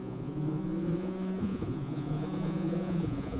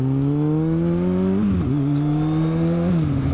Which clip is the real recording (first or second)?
second